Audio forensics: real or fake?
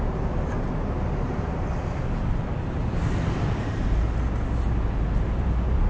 real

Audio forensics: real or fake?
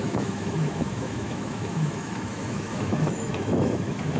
fake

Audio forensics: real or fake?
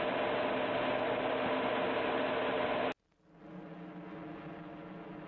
real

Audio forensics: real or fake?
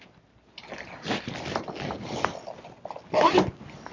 real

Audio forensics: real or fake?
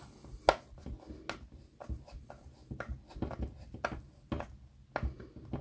real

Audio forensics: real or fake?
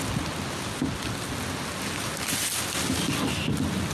real